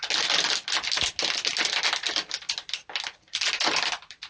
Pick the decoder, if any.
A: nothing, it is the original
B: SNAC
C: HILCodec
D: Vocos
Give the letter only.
A